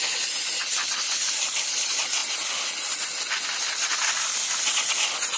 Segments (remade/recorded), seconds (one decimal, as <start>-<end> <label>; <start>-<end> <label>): 0.0-5.4 recorded